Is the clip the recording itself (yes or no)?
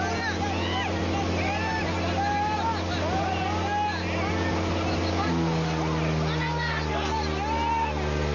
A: yes